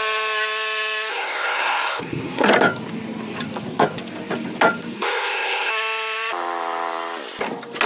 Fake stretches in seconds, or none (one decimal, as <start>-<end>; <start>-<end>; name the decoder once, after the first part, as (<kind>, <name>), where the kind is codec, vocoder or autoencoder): 1.1-2.5 (codec, SNAC); 4.9-5.7